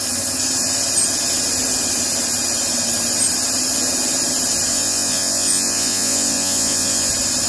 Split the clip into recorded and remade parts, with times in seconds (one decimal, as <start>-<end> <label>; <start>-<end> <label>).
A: 0.0-4.7 recorded; 4.7-7.1 remade; 7.1-7.5 recorded